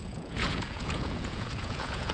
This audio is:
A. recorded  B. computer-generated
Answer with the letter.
B